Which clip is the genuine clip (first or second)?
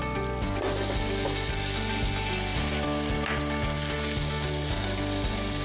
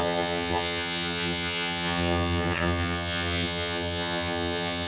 first